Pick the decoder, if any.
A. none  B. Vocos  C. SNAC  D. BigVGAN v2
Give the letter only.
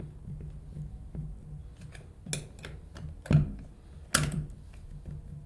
A